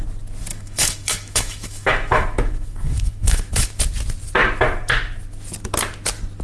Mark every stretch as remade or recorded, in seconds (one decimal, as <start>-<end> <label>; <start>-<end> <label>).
0.0-0.5 recorded; 0.5-3.8 remade; 3.8-6.4 recorded